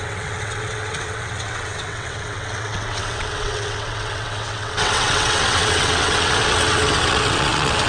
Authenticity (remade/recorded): remade